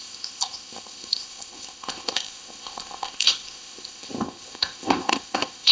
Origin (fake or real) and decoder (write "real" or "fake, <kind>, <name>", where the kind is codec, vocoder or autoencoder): fake, codec, ZipCodec